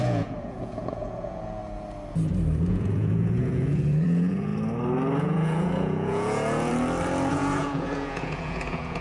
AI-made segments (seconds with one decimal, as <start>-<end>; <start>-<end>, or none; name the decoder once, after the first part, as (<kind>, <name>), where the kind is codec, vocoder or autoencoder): 0.0-1.6 (vocoder, Vocos); 2.7-4.5; 5.2-6.7; 7.3-9.0